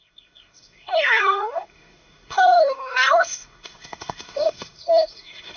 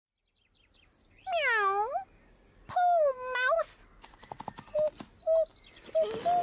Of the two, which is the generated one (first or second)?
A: first